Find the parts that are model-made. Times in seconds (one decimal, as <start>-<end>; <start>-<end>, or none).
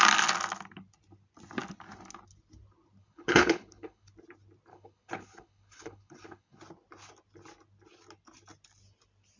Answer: 3.0-4.1; 4.7-6.6